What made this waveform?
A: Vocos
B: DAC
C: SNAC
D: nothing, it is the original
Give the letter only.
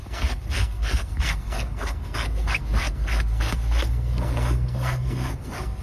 C